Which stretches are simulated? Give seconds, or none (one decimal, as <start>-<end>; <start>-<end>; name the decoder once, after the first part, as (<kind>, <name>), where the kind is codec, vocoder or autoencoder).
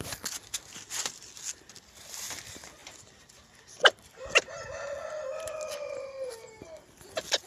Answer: 2.8-6.3 (vocoder, BigVGAN v2)